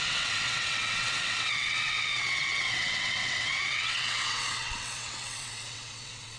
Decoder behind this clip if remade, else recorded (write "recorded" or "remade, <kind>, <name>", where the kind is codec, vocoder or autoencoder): remade, vocoder, WaveNeXt